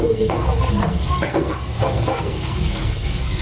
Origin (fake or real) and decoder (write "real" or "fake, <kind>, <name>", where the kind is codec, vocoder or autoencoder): fake, codec, SNAC